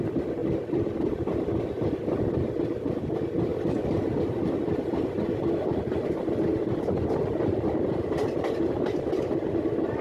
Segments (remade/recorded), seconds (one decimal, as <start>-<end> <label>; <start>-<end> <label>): 0.0-0.4 recorded; 0.4-2.2 remade; 2.2-3.5 recorded; 3.5-5.3 remade; 5.3-6.5 recorded; 6.5-10.0 remade